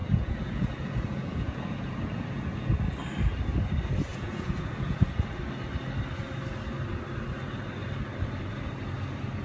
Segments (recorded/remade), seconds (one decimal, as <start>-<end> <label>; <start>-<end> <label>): 0.0-2.8 remade; 2.8-4.1 recorded; 4.1-5.4 remade; 5.4-9.4 recorded